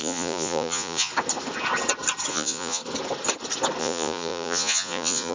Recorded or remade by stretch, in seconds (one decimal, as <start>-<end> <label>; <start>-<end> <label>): 0.0-1.1 remade; 1.1-2.3 recorded; 2.3-2.8 remade; 2.8-3.8 recorded; 3.8-5.3 remade